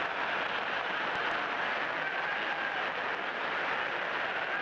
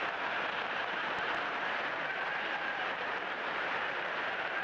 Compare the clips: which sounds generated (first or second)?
second